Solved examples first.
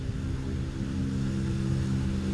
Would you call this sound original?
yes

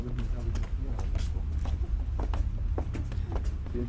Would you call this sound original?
yes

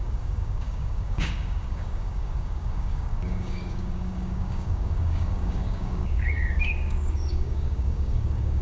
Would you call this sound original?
no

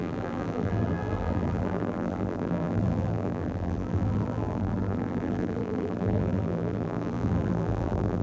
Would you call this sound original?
no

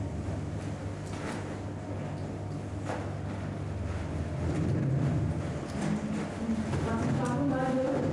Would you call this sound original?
yes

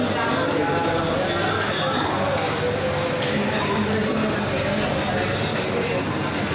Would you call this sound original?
yes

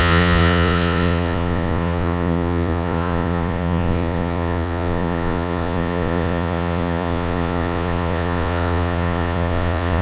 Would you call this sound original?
no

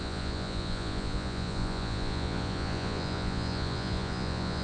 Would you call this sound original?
no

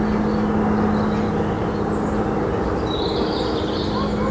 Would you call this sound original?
yes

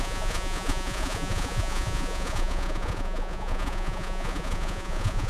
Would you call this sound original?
no